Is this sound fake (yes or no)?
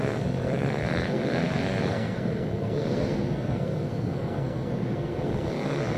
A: yes